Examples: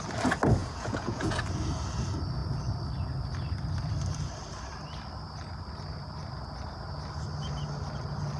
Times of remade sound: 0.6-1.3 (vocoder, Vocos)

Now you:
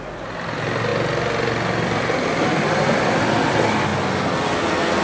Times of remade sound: none

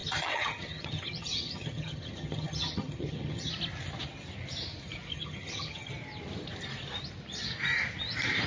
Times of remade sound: 0.0-3.5 (vocoder, HiFi-GAN); 5.1-5.9

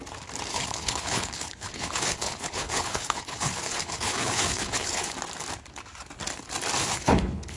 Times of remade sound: 0.5-5.1 (codec, HILCodec); 6.8-7.6

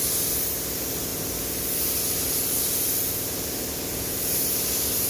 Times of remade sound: none

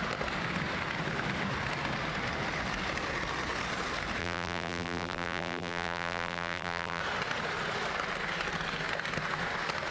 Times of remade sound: 4.2-7.0 (vocoder, BigVGAN v2)